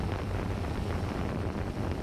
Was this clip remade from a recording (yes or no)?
no